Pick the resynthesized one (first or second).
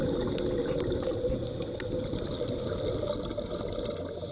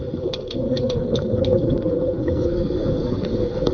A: second